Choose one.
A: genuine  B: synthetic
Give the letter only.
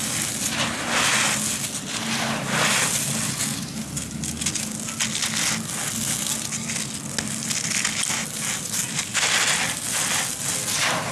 A